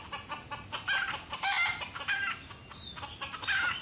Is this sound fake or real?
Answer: real